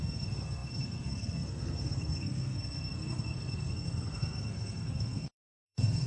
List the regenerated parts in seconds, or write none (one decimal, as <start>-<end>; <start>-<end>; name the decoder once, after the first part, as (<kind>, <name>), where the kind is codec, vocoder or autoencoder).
0.0-6.1 (codec, SNAC)

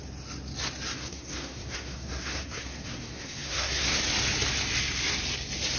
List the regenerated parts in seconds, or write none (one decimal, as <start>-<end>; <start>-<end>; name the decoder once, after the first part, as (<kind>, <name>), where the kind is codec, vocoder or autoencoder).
0.9-4.0 (codec, SNAC)